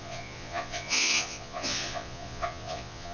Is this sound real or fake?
fake